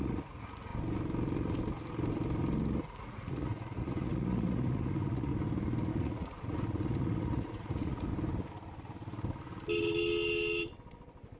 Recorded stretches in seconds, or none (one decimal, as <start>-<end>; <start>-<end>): 0.7-2.8; 5.3-5.9; 8.1-11.4

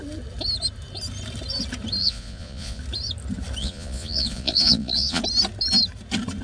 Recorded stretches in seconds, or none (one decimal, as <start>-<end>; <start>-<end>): 0.0-2.0; 2.8-3.6; 5.2-6.4

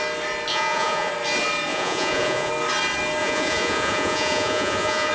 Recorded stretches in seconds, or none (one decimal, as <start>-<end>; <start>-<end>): 0.0-0.5; 1.1-1.7; 2.5-3.2